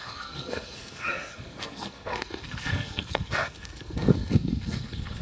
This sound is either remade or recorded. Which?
remade